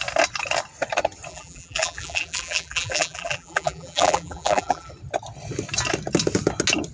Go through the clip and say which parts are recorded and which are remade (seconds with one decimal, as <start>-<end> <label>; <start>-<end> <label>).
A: 0.0-1.3 recorded; 1.3-4.9 remade; 4.9-6.9 recorded